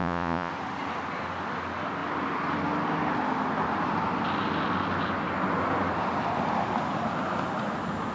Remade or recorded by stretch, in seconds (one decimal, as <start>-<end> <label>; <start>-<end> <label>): 0.0-0.5 remade; 0.5-8.1 recorded